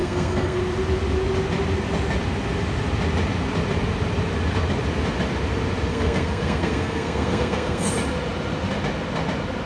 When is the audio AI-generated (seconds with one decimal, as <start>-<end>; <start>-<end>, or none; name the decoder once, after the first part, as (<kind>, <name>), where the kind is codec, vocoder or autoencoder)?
0.0-0.6 (codec, SNAC); 5.9-7.9